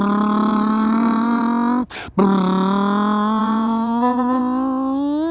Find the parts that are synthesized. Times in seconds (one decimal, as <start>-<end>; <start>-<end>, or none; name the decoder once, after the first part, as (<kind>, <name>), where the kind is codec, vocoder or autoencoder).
0.5-1.4 (vocoder, Vocos); 3.4-4.4